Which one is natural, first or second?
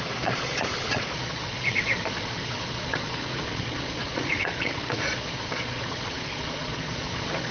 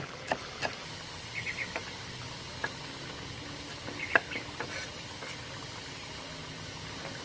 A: second